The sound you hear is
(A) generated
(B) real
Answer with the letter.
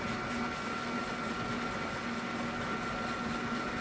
B